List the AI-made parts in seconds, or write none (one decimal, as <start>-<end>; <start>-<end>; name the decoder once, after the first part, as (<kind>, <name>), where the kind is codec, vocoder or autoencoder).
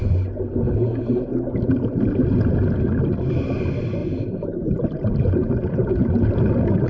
4.0-6.3 (vocoder, BigVGAN v2)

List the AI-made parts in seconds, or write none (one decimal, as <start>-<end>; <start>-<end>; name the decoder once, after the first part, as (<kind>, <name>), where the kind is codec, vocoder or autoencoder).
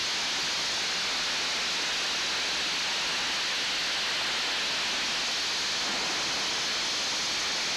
none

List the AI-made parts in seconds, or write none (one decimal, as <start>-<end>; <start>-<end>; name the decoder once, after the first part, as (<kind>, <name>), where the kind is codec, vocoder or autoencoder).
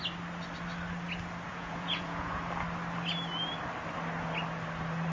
1.5-2.4 (vocoder, Vocos)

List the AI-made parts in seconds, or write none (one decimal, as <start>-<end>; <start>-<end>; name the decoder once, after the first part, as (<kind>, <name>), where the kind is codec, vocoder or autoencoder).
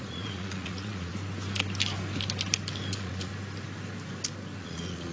0.0-1.1 (vocoder, Vocos); 2.9-3.3; 4.6-5.1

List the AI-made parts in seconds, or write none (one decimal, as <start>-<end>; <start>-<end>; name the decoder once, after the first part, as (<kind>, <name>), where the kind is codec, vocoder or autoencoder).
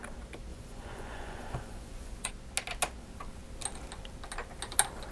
0.5-2.3 (vocoder, Vocos)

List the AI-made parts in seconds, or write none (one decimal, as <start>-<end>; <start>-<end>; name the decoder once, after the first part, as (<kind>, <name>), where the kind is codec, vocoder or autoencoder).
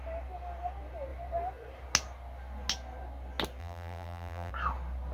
3.6-4.5 (vocoder, BigVGAN v2)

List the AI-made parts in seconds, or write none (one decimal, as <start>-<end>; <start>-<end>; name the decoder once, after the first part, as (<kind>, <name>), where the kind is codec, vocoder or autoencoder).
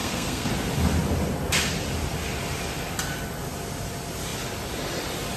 0.0-0.5 (codec, SNAC)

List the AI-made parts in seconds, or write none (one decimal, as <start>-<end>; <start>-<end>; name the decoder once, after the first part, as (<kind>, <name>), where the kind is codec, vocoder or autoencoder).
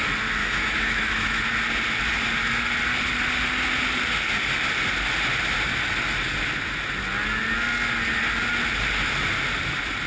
0.4-1.4 (autoencoder, DAC-VAE)